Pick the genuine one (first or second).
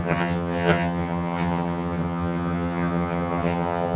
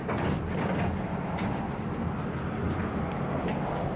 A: second